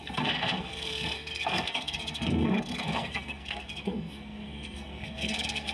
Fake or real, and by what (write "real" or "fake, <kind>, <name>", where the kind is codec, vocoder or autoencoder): fake, codec, SNAC